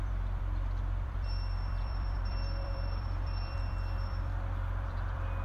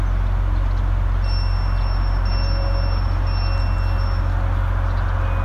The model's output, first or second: first